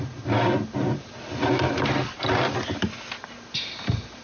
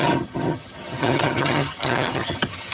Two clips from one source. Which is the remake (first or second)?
second